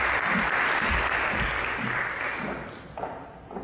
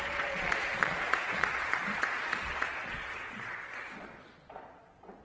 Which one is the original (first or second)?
first